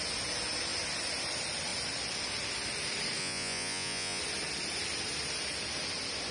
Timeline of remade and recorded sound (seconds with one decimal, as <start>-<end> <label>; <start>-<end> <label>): 0.0-3.2 recorded; 3.2-4.2 remade; 4.2-6.3 recorded